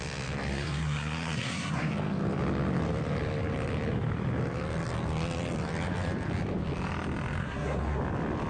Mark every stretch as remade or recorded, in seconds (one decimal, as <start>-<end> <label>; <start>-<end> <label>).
0.0-0.5 recorded; 0.5-1.9 remade; 1.9-7.4 recorded; 7.4-8.0 remade; 8.0-8.5 recorded